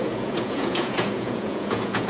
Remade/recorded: remade